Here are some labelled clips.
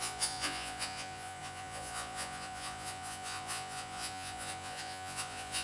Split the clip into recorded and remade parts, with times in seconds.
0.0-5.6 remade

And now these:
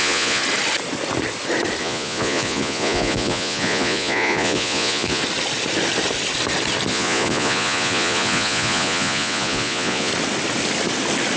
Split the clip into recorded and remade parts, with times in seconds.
0.0-0.4 remade; 0.4-1.8 recorded; 1.8-5.2 remade; 5.2-6.9 recorded; 6.9-10.1 remade; 10.1-11.4 recorded

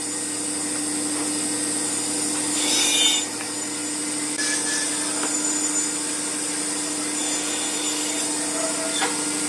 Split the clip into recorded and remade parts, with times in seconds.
0.0-9.5 recorded

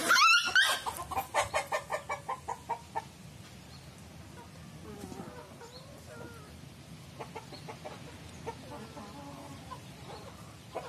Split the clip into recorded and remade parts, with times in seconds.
0.0-10.9 recorded

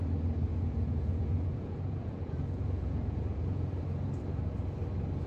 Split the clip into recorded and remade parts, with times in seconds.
0.0-0.5 recorded; 0.5-3.7 remade; 3.7-5.3 recorded

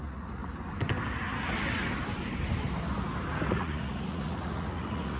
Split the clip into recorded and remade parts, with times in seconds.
0.0-0.4 remade; 0.4-3.5 recorded; 3.5-5.2 remade